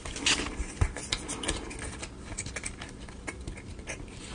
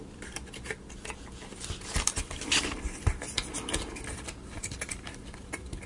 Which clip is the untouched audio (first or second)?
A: first